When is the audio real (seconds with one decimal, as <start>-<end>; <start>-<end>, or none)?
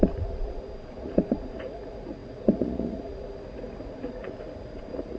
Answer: none